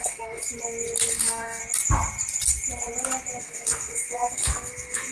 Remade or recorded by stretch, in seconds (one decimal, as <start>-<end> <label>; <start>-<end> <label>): 0.0-0.4 remade; 0.4-1.1 recorded; 1.1-1.6 remade; 1.6-3.4 recorded; 3.4-5.1 remade